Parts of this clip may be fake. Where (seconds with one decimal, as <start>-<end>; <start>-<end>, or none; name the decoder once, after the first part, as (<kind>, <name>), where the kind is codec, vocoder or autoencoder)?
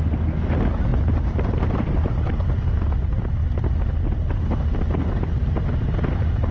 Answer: 0.9-2.5 (vocoder, BigVGAN v2)